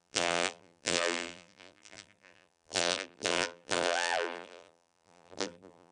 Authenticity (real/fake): fake